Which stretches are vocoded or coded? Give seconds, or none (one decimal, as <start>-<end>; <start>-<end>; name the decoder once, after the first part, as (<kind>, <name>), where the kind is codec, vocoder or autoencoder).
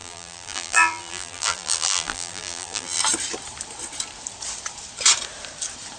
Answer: 0.0-3.0 (vocoder, BigVGAN v2)